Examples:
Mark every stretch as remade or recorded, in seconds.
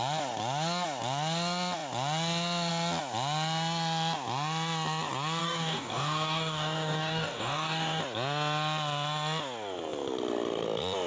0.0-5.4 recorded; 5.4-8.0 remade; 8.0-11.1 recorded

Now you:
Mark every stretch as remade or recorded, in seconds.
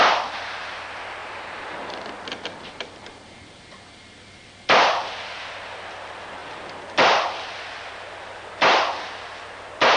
0.0-1.2 recorded; 1.2-5.1 remade; 5.1-6.4 recorded; 6.4-7.9 remade; 7.9-10.0 recorded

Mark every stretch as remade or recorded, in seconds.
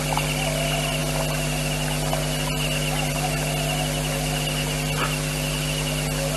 0.0-6.4 recorded